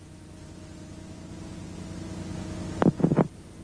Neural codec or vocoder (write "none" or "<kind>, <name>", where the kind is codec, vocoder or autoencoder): none